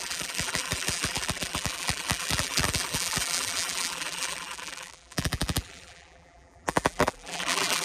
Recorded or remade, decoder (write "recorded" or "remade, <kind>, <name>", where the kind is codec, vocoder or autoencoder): remade, vocoder, BigVGAN v2